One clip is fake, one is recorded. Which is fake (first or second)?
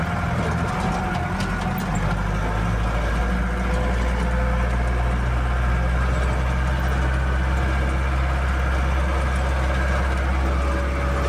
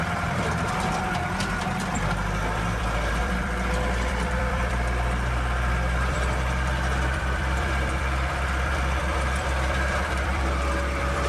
second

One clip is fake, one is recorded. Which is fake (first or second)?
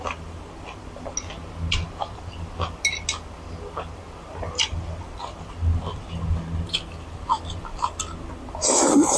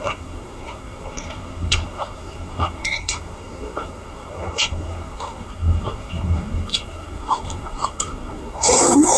second